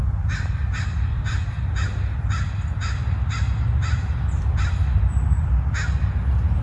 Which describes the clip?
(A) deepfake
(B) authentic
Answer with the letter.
B